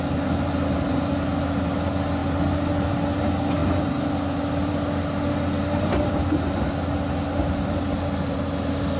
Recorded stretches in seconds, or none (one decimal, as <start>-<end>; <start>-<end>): 0.0-9.0